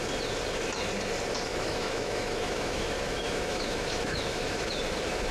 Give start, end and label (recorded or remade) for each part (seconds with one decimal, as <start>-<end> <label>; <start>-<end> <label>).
0.0-1.5 recorded; 1.5-4.7 remade; 4.7-5.3 recorded